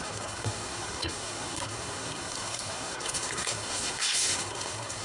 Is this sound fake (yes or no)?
yes